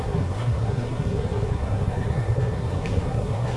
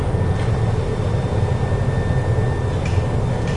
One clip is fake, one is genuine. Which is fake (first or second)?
first